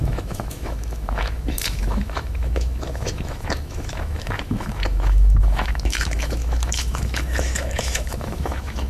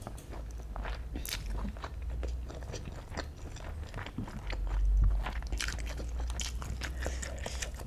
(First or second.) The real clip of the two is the second